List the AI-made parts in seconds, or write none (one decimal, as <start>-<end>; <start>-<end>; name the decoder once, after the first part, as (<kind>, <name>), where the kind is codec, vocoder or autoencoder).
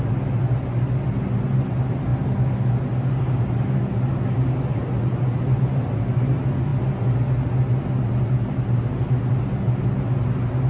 none